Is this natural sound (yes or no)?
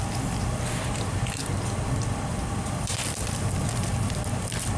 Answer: no